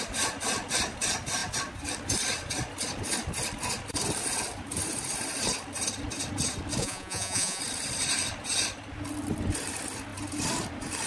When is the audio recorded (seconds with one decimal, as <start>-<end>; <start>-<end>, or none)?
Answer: 0.0-6.8; 7.6-11.1